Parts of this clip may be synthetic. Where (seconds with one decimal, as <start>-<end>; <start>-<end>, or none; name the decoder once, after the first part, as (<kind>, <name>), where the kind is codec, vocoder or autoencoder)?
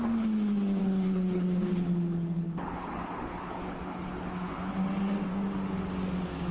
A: 0.8-4.7 (codec, HILCodec)